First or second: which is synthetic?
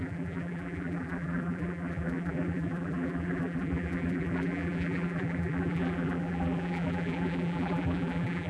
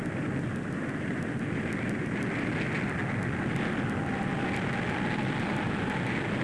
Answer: first